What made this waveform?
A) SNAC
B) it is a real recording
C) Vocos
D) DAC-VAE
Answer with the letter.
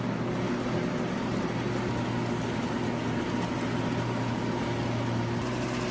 B